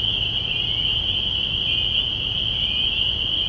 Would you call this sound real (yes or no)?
yes